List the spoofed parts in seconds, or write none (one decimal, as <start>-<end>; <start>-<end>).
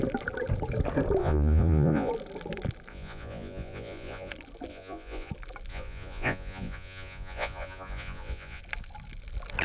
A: 1.2-2.1; 2.9-4.3; 4.7-5.3; 5.7-8.6